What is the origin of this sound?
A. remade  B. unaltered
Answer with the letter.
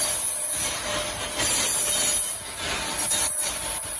B